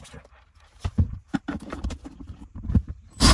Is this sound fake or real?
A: fake